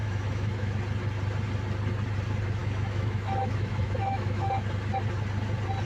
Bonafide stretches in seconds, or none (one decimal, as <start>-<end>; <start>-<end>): 0.7-2.6; 4.5-5.9